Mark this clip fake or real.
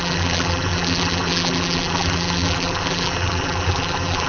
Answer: fake